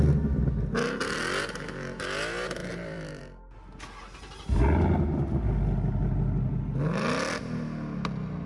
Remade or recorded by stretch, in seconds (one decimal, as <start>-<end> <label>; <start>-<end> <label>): 0.0-2.6 recorded; 2.6-3.2 remade; 3.2-8.5 recorded